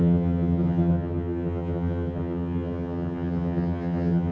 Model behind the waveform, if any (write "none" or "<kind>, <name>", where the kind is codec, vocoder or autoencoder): vocoder, HiFi-GAN